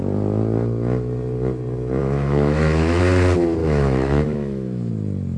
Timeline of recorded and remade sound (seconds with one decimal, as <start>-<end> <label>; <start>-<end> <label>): 0.0-2.0 recorded; 2.0-3.0 remade; 3.0-3.6 recorded; 3.6-4.9 remade; 4.9-5.4 recorded